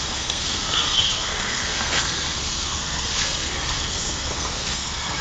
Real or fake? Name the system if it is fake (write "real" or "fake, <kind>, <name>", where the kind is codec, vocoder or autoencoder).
fake, codec, SNAC